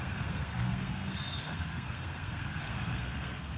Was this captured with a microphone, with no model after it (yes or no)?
no